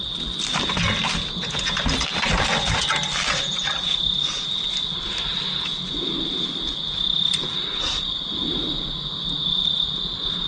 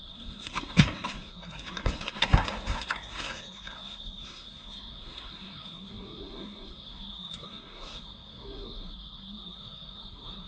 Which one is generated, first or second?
second